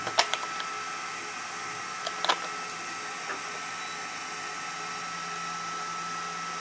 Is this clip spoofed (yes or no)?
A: no